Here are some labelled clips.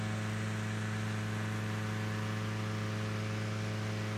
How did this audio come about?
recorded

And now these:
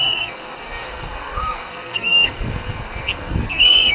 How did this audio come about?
remade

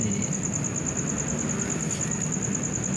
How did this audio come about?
recorded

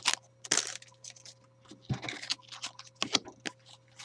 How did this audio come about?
recorded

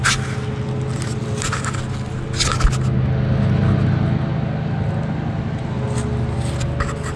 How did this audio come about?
recorded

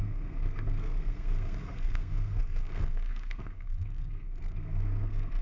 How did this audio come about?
remade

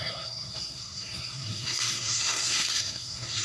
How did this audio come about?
remade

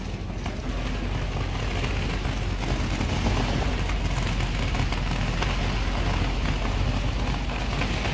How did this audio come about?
recorded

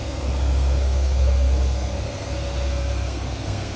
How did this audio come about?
remade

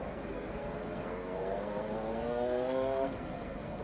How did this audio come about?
remade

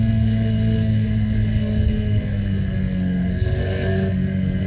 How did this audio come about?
remade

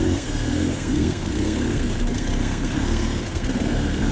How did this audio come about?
remade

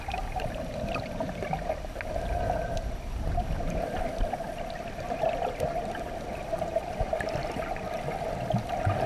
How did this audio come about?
recorded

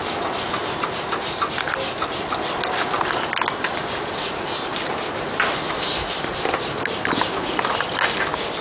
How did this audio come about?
recorded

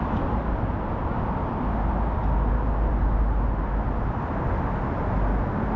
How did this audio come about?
recorded